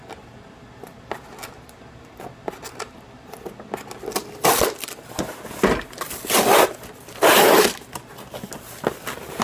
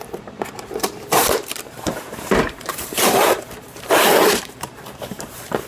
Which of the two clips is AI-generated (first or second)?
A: second